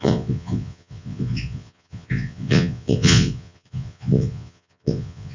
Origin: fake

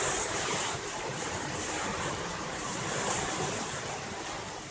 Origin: fake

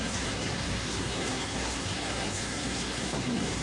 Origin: fake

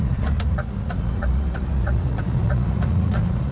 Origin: fake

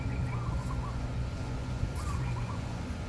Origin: fake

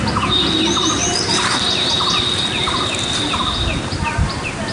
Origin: real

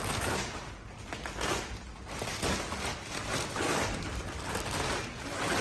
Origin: real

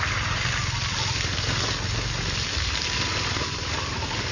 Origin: real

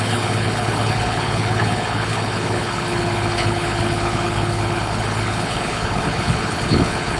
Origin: fake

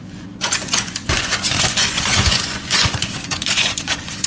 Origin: fake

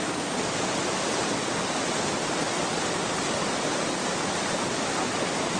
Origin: fake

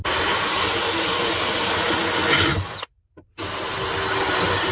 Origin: real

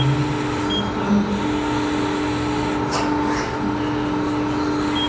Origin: real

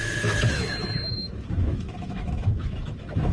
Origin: fake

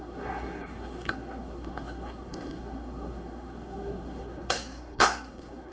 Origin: fake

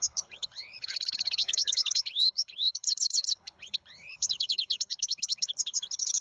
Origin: fake